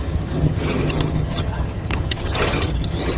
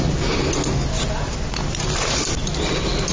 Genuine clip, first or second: second